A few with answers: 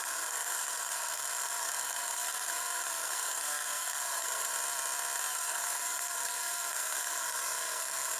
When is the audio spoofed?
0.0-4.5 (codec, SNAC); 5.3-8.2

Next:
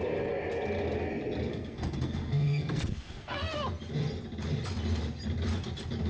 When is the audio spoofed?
1.5-3.5 (codec, SNAC)

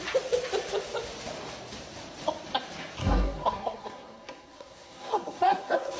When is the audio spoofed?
3.0-6.0 (codec, SNAC)

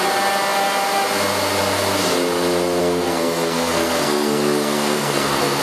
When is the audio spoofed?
2.8-5.6 (codec, SNAC)

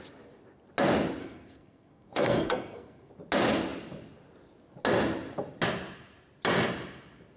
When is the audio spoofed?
1.2-3.1 (codec, SNAC)

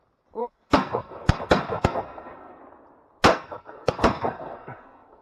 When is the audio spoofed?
0.4-2.6 (codec, SNAC); 3.3-5.2